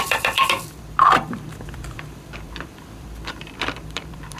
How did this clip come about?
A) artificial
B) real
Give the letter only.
A